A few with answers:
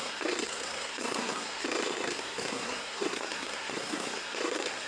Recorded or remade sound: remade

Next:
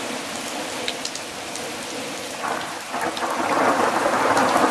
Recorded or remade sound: recorded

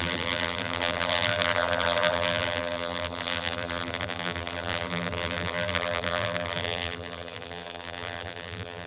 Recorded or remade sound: remade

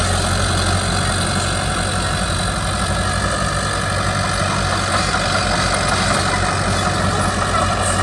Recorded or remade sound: recorded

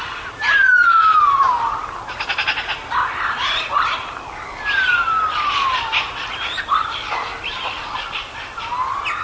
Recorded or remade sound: recorded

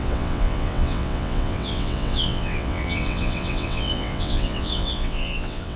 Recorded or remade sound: remade